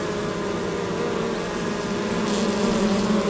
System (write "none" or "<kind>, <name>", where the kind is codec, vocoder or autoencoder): none